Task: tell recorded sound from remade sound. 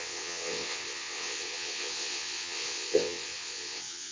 remade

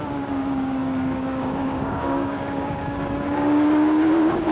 remade